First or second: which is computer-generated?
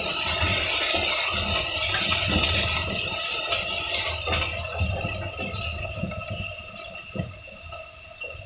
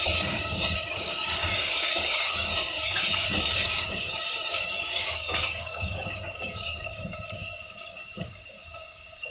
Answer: second